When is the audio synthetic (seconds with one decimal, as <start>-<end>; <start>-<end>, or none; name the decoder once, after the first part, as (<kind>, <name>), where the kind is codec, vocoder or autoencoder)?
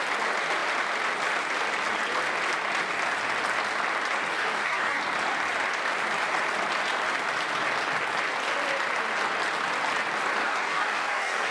4.3-5.0 (codec, DAC); 10.4-11.5